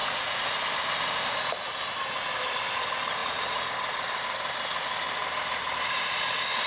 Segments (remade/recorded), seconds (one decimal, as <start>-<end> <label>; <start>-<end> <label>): 0.0-0.6 remade; 0.6-3.2 recorded; 3.2-3.7 remade; 3.7-6.7 recorded

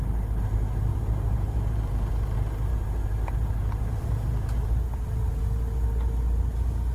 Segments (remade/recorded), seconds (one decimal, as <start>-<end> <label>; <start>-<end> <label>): 0.0-0.9 recorded; 0.9-2.1 remade; 2.1-2.7 recorded; 2.7-5.4 remade; 5.4-6.9 recorded

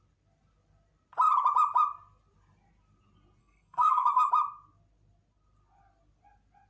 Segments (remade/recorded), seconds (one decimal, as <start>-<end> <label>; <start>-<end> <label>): 0.0-3.4 recorded; 3.4-4.3 remade; 4.3-6.7 recorded

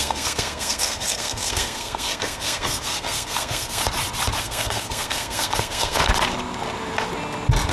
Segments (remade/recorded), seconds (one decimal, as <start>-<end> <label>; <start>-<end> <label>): 0.0-3.8 remade; 3.8-4.4 recorded; 4.4-6.0 remade; 6.0-7.7 recorded

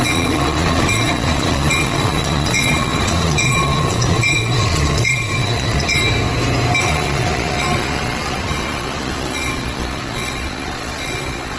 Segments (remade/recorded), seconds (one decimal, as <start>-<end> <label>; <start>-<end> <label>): 0.0-6.0 remade; 6.0-6.8 recorded; 6.8-11.6 remade

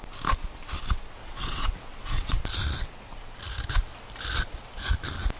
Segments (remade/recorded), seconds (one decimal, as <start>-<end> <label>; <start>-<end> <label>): 0.0-1.2 recorded; 1.2-2.4 remade; 2.4-5.4 recorded

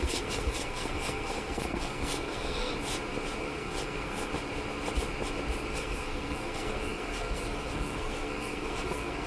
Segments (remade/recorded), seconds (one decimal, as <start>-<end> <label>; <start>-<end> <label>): 0.0-2.7 remade; 2.7-3.4 recorded; 3.4-4.3 remade; 4.3-5.7 recorded; 5.7-9.3 remade

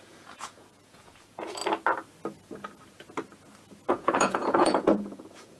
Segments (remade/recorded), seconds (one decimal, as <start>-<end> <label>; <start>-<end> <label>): 0.0-1.6 remade; 1.6-3.9 recorded; 3.9-5.6 remade